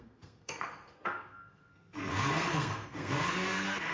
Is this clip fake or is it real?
fake